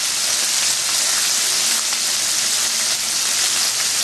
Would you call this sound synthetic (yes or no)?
no